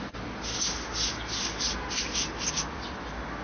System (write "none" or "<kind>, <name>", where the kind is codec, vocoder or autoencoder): none